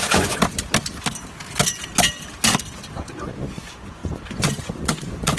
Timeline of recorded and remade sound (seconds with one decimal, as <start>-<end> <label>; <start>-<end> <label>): 0.0-0.4 remade; 0.4-2.9 recorded; 2.9-5.4 remade